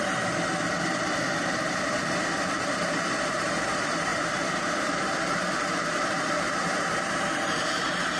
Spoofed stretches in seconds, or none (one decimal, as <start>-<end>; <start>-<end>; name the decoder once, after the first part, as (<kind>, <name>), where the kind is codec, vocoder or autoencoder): 0.0-8.2 (vocoder, BigVGAN v2)